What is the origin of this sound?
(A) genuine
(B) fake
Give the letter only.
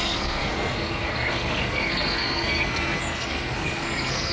B